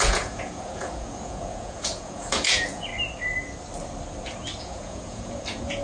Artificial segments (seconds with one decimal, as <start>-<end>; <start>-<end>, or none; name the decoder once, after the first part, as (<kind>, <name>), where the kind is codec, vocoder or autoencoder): 0.0-2.9 (vocoder, Vocos); 4.6-5.8